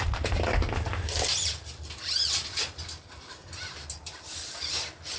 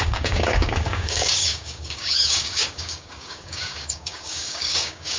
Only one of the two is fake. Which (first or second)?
second